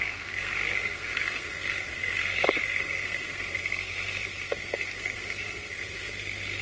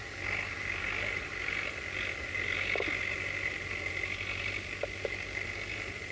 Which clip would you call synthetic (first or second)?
first